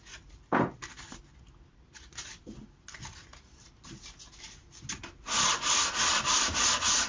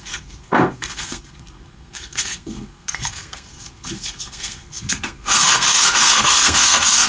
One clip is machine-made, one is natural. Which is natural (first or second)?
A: first